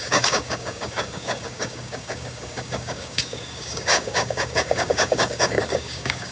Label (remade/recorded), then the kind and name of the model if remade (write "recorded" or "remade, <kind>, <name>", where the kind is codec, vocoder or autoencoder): remade, codec, DAC